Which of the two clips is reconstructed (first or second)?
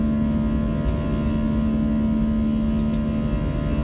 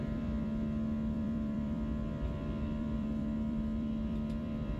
second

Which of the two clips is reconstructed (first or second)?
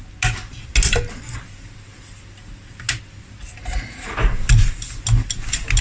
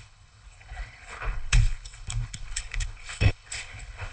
second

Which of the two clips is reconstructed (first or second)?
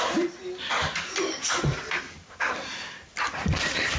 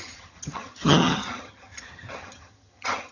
second